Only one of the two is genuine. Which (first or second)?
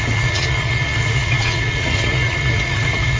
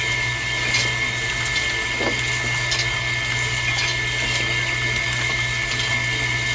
second